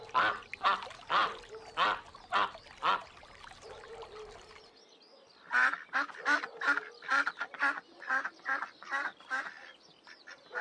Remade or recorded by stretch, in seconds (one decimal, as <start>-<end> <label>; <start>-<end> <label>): 0.0-10.6 recorded